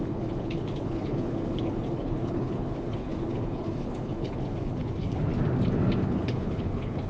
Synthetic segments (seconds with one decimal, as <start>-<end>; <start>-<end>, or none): 0.0-5.3; 6.0-7.1